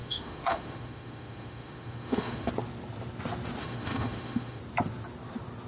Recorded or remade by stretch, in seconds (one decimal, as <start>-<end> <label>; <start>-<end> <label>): 0.0-2.5 remade; 2.5-3.6 recorded; 3.6-4.6 remade; 4.6-5.7 recorded